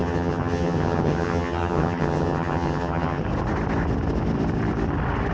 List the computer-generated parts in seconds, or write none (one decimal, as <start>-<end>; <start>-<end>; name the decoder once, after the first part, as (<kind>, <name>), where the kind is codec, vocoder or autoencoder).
0.0-3.2 (vocoder, HiFi-GAN)